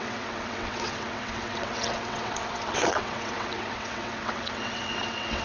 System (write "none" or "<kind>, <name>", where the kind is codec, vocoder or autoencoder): vocoder, WaveNeXt